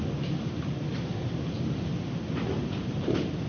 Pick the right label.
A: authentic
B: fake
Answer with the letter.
A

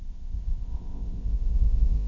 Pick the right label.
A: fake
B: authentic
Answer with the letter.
A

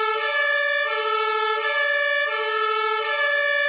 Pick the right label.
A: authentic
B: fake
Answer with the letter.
A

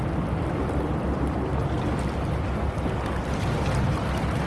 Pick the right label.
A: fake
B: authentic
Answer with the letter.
B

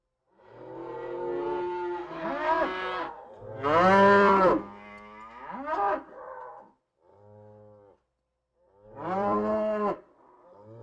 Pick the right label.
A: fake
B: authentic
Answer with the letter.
A